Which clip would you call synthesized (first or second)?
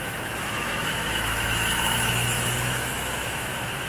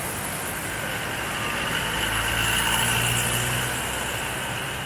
first